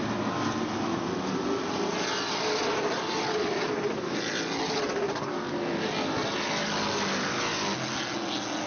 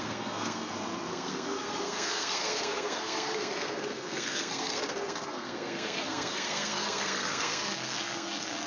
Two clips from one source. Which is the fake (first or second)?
second